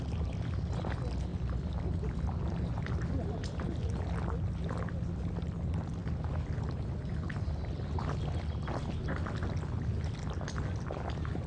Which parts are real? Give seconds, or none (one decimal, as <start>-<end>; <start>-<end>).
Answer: 0.0-1.3; 3.3-11.5